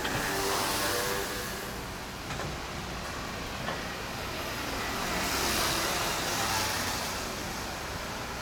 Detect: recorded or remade remade